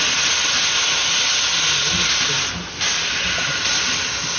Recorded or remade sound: recorded